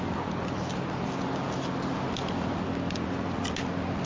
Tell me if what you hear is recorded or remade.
recorded